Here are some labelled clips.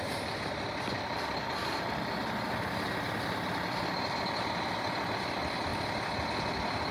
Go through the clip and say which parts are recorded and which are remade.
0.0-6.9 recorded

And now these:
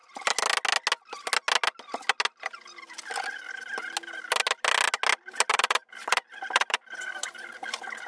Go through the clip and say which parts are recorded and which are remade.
0.0-5.5 recorded; 5.5-6.9 remade; 6.9-8.1 recorded

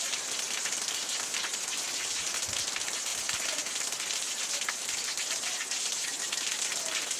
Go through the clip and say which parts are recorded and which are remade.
0.0-7.2 recorded

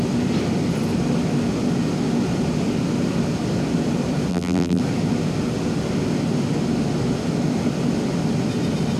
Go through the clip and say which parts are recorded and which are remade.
0.0-4.3 recorded; 4.3-4.8 remade; 4.8-9.0 recorded

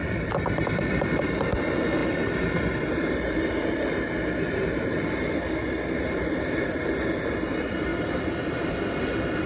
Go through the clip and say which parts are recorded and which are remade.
0.0-9.5 remade

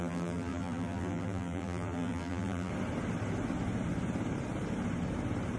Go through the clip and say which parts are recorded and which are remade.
0.0-2.7 remade; 2.7-5.6 recorded

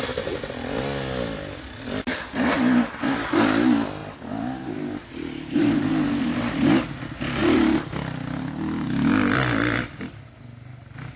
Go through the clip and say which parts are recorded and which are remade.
0.0-7.4 recorded; 7.4-9.9 remade; 9.9-11.2 recorded

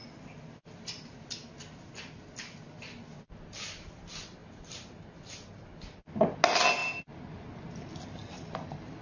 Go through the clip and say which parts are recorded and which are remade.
0.0-4.4 recorded; 4.4-5.5 remade; 5.5-6.8 recorded; 6.8-7.6 remade; 7.6-9.0 recorded